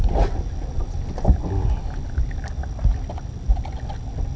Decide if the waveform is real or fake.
real